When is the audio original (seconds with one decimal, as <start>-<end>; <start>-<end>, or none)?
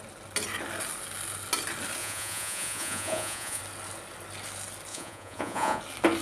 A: 0.0-2.0; 3.6-4.9; 5.8-6.2